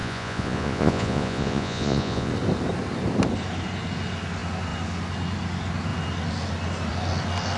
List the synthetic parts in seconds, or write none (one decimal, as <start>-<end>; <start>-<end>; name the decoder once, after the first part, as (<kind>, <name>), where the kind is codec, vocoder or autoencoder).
0.0-2.3 (vocoder, Vocos)